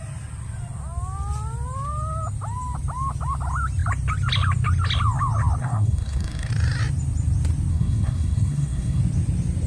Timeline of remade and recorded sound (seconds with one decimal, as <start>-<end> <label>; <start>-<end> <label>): 0.0-5.6 recorded; 5.6-6.5 remade; 6.5-7.7 recorded; 7.7-9.0 remade; 9.0-9.7 recorded